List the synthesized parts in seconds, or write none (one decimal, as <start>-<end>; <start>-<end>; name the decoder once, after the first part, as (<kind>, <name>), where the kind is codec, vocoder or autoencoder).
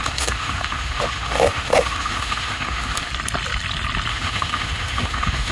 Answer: 0.0-3.1 (autoencoder, DAC-VAE); 4.1-5.5